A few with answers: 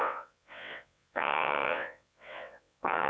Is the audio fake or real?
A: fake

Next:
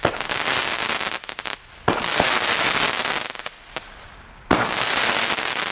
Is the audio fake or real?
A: real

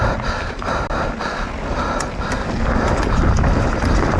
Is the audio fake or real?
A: real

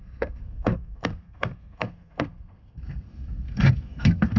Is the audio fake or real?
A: fake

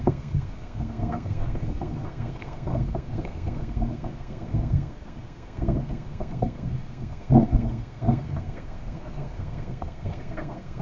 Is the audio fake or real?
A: fake